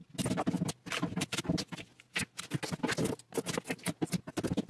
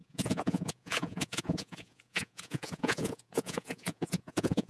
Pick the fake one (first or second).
second